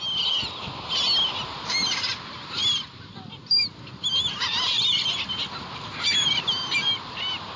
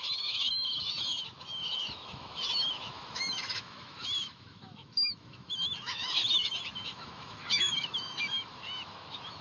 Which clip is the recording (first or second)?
first